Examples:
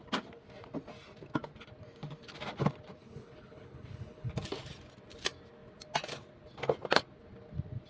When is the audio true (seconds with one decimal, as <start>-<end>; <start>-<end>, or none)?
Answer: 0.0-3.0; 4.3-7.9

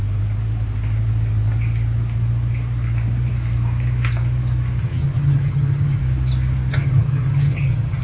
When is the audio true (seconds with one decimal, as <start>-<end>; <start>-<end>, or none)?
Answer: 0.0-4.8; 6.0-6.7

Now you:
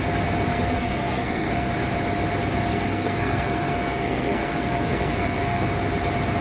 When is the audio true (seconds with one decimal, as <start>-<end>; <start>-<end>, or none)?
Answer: 0.0-0.5; 1.7-2.7; 5.7-6.4

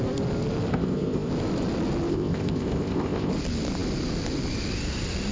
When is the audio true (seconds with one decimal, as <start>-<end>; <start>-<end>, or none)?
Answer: 0.0-0.7; 1.3-2.1; 3.3-5.3

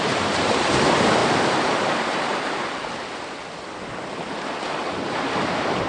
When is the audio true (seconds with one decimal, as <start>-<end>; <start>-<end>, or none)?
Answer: 2.3-4.8

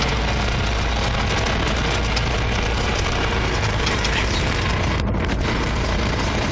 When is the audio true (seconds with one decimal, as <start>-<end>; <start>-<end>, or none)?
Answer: 0.0-2.9

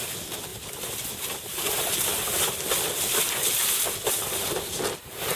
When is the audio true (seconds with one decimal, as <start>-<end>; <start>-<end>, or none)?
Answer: 0.0-0.5; 1.3-5.4